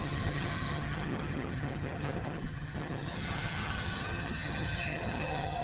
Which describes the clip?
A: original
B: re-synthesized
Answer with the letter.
B